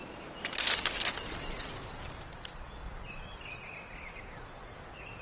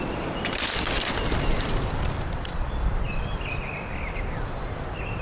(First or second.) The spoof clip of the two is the second